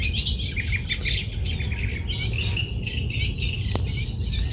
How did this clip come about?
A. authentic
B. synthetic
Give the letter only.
A